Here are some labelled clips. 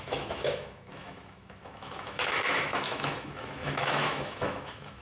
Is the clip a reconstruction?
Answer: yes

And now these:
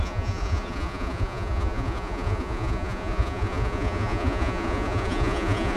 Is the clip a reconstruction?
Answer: yes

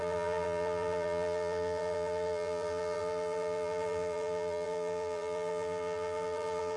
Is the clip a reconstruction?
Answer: yes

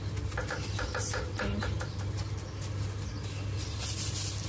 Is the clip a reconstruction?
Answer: no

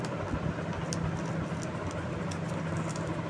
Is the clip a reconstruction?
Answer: no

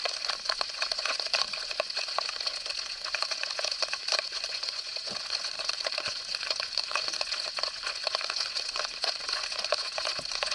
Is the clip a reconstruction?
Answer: yes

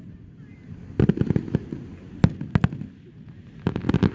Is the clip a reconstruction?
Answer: no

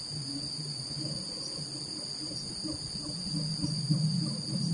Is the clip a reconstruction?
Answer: no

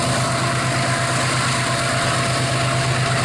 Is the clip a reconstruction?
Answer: no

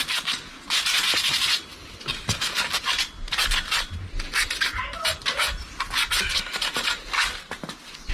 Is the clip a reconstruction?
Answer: no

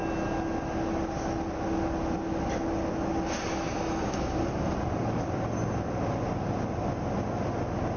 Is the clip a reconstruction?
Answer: no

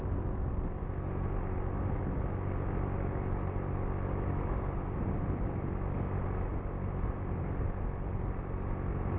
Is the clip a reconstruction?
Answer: no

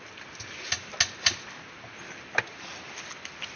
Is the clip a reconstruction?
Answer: no